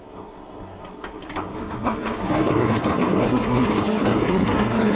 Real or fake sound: fake